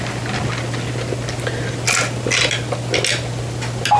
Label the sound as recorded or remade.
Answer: recorded